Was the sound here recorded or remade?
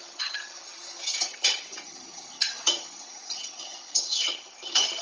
remade